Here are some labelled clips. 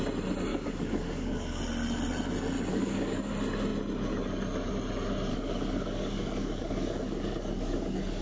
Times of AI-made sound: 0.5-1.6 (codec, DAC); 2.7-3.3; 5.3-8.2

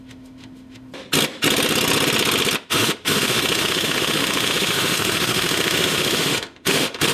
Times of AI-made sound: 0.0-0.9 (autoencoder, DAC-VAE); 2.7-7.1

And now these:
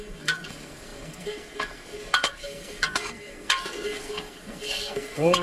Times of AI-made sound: 0.0-5.4 (codec, SNAC)